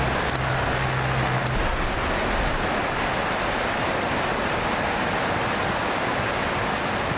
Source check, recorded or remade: recorded